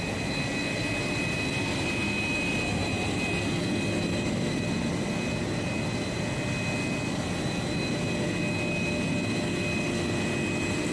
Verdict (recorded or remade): recorded